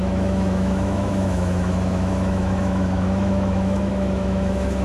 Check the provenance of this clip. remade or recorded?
remade